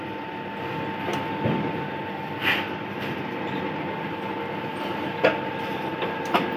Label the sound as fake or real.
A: real